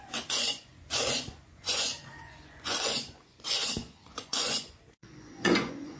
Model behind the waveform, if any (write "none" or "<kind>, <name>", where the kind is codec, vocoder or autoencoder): vocoder, Vocos